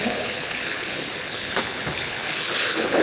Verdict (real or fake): fake